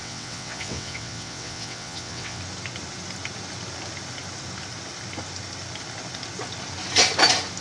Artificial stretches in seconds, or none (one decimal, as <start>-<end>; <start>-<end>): 0.0-2.4